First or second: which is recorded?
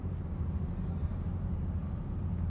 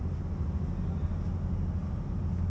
second